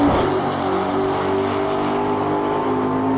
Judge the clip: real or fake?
real